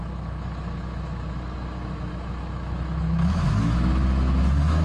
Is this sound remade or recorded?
remade